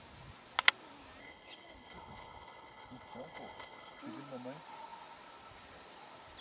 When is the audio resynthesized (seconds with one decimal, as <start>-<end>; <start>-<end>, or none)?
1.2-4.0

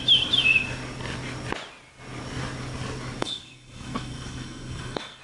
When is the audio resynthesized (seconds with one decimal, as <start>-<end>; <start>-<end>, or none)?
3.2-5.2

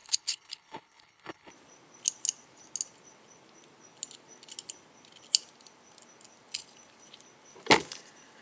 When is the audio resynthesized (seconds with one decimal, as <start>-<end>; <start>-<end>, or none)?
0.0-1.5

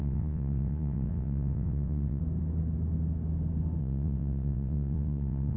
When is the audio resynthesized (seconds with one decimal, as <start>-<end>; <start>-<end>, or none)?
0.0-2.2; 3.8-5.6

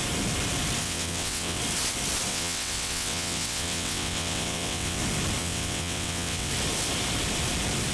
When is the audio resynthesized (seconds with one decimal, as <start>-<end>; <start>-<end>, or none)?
0.8-1.6; 2.3-5.0; 5.4-6.5

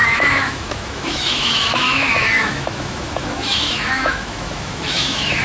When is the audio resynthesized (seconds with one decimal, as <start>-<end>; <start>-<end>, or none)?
0.0-5.4